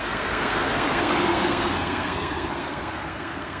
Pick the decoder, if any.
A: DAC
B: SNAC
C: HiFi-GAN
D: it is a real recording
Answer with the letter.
B